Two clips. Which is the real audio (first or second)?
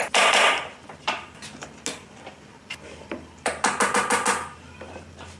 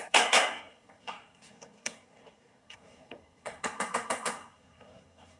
first